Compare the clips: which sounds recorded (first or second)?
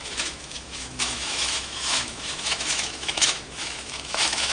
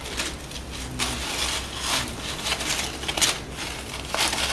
second